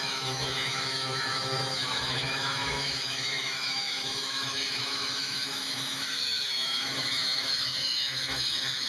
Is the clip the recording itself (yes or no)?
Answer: no